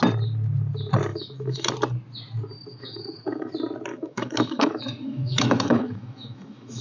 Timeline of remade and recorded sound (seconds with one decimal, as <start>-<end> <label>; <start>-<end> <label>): 0.0-1.1 recorded; 1.1-1.7 remade; 1.7-2.7 recorded; 2.7-3.5 remade; 3.5-3.9 recorded; 3.9-6.8 remade